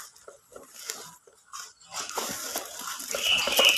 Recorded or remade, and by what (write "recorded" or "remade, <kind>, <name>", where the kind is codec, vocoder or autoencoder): recorded